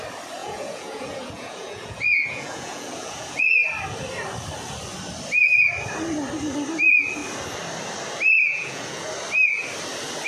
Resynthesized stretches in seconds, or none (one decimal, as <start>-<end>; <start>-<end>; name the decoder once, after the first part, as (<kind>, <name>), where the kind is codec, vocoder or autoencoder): 0.4-3.4 (vocoder, Vocos); 8.5-9.1